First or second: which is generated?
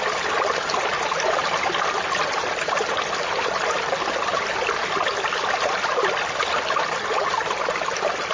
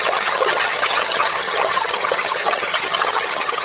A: second